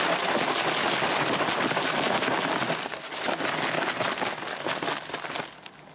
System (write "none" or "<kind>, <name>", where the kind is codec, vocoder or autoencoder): none